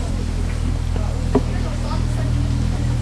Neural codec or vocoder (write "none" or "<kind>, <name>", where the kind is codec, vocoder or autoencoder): none